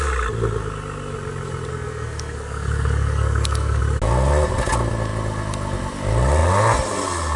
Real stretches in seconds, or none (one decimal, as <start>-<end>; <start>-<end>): 0.0-1.7; 3.8-7.4